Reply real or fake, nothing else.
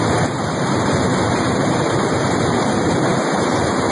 fake